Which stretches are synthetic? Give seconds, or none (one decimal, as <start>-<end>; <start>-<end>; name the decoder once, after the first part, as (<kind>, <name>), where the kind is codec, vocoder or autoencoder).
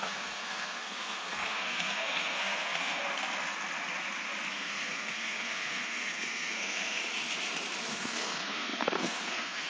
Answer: 0.0-3.0 (codec, SNAC); 4.5-7.0; 7.9-9.7